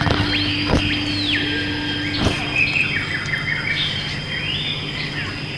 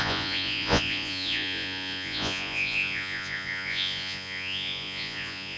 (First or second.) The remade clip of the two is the second